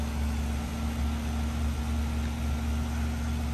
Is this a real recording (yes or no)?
yes